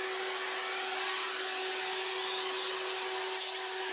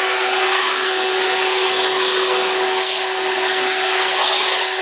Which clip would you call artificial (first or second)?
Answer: second